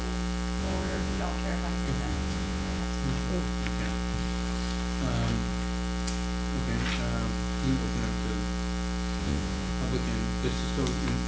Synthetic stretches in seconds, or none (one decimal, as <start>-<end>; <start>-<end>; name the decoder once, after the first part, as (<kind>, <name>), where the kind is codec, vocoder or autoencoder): 0.6-1.2 (vocoder, Vocos); 2.1-2.8; 9.2-9.7